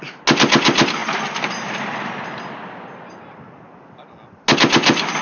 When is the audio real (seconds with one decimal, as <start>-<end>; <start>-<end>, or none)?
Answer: 0.0-5.2